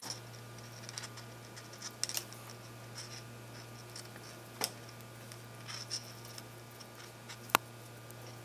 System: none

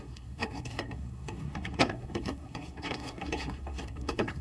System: codec, SNAC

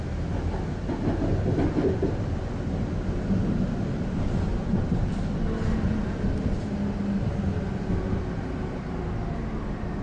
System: none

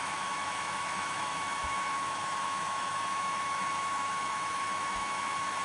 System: autoencoder, DAC-VAE